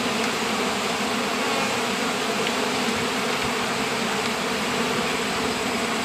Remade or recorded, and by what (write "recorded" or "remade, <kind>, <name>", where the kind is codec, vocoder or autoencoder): recorded